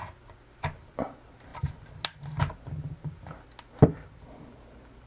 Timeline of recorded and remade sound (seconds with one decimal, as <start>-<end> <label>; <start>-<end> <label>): 0.0-5.1 recorded